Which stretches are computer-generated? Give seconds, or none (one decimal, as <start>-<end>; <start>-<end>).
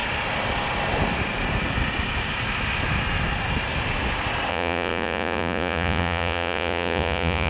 4.5-7.5